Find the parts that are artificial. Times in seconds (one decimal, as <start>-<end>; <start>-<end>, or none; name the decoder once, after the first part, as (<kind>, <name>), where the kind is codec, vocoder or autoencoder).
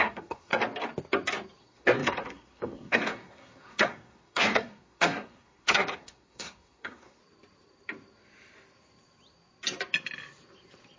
0.0-0.5 (codec, SNAC); 1.6-7.2